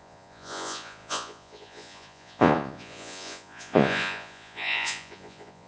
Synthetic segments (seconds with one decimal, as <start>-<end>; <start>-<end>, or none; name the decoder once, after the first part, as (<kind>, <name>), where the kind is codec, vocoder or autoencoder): 0.0-5.7 (vocoder, Vocos)